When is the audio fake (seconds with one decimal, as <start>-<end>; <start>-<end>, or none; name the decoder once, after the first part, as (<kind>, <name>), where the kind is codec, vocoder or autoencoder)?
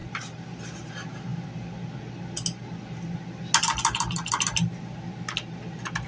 0.0-0.9 (vocoder, BigVGAN v2)